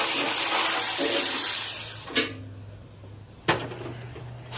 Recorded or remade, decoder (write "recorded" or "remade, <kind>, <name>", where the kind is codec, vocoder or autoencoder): recorded